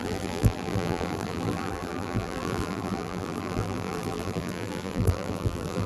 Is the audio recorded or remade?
remade